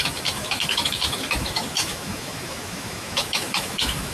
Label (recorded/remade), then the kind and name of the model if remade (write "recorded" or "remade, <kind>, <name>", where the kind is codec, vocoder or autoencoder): remade, autoencoder, DAC-VAE